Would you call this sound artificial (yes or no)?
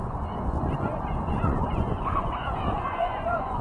yes